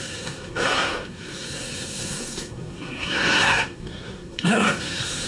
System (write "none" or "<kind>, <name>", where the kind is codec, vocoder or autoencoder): codec, SNAC